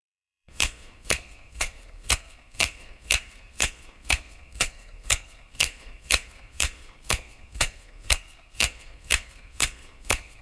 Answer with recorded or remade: remade